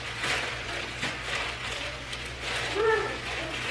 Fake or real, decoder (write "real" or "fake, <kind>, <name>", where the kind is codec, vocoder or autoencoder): fake, vocoder, Vocos